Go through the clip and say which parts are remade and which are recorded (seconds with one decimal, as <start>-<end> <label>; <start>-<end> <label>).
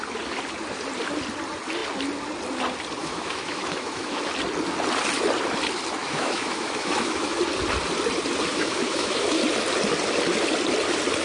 0.0-3.0 recorded; 3.0-4.3 remade; 4.3-6.0 recorded; 6.0-7.4 remade; 7.4-8.5 recorded; 8.5-9.4 remade; 9.4-11.2 recorded